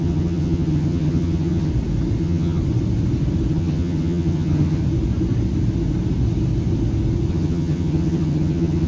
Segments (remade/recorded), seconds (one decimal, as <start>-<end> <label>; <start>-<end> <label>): 0.0-1.7 remade; 1.7-2.2 recorded; 2.2-2.6 remade; 2.6-3.5 recorded; 3.5-4.8 remade; 4.8-7.3 recorded; 7.3-8.9 remade